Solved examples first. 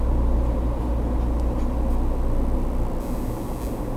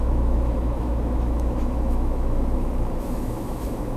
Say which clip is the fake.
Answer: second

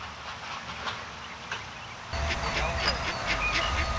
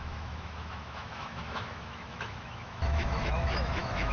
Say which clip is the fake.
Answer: second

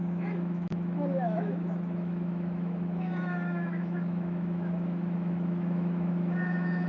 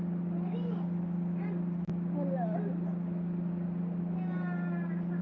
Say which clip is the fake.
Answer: first